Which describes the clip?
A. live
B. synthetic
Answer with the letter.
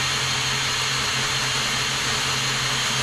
A